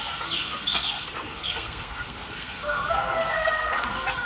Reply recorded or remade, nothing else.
remade